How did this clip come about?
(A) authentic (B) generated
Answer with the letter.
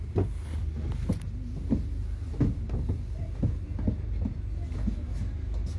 A